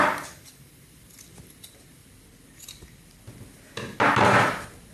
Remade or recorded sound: recorded